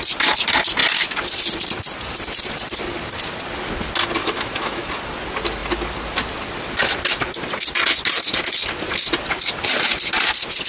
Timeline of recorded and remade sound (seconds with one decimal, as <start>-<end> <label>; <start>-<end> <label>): 0.0-4.2 recorded; 4.2-4.9 remade; 4.9-10.7 recorded